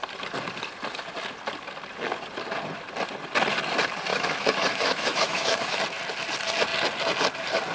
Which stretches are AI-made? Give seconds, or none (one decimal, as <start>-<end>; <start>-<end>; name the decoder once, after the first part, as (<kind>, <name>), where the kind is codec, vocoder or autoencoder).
4.1-5.8 (autoencoder, DAC-VAE)